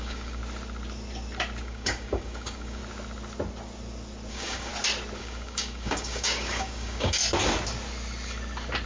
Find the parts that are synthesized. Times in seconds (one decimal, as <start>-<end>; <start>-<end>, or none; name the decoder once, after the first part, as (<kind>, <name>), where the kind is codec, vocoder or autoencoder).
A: 0.0-0.4 (codec, DAC); 1.6-2.8; 4.3-4.7; 5.2-7.2